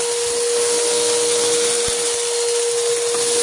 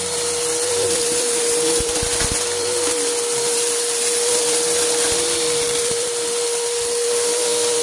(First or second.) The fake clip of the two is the second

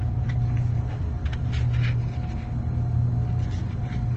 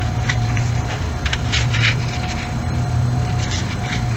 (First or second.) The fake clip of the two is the second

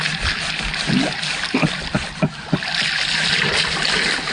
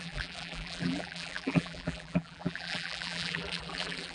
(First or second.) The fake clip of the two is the second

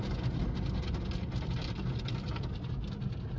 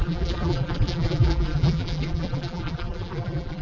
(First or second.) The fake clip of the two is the second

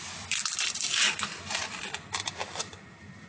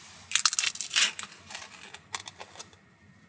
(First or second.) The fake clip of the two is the first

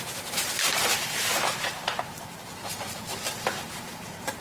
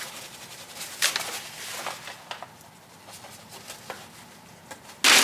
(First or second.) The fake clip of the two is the first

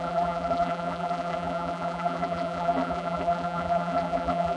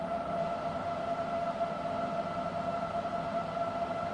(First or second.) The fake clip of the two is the first